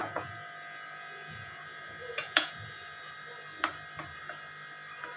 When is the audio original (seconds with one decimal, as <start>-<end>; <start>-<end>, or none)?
3.1-5.2